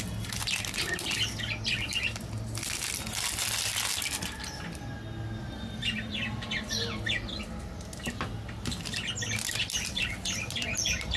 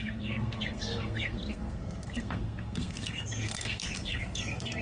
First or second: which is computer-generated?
second